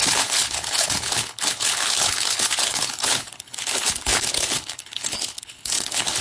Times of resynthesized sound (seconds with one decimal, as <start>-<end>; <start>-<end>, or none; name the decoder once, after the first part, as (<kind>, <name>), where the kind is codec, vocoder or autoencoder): 0.0-6.2 (codec, HILCodec)